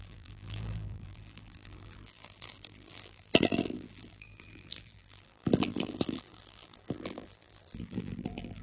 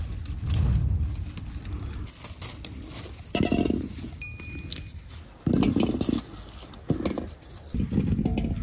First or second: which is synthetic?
first